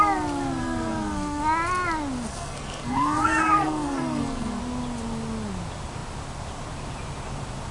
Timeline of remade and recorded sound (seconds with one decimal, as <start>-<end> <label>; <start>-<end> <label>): 0.0-0.6 recorded; 0.6-1.4 remade; 1.4-2.3 recorded; 2.3-4.6 remade; 4.6-7.7 recorded